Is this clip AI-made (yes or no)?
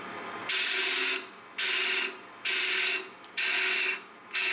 no